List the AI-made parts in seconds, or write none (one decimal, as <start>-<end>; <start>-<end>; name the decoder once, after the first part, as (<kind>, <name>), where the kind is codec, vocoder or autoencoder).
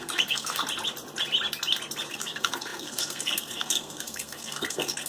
0.0-0.6 (codec, SNAC); 2.1-5.1